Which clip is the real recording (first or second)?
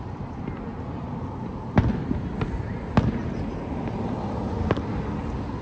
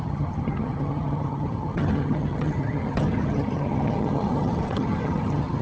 first